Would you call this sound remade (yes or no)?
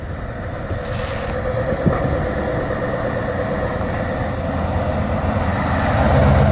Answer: no